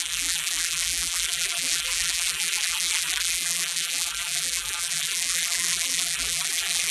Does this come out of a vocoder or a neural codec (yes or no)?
yes